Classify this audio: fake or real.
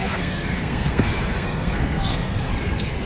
fake